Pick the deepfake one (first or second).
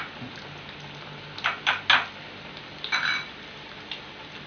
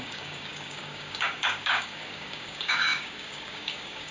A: second